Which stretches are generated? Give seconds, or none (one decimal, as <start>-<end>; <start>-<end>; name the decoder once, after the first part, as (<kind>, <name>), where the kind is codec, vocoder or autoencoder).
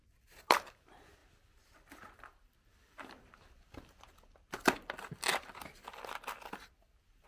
1.2-3.3 (vocoder, BigVGAN v2)